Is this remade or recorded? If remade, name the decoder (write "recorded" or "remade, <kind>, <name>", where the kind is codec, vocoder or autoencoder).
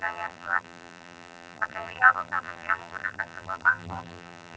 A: remade, vocoder, BigVGAN v2